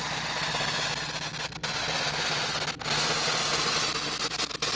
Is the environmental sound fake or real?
real